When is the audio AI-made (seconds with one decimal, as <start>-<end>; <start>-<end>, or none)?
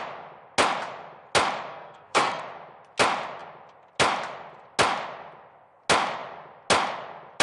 1.7-2.4